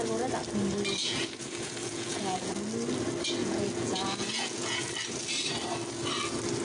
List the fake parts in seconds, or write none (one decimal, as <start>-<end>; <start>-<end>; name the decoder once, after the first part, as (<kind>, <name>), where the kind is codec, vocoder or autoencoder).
1.0-2.5 (vocoder, Vocos); 3.4-4.9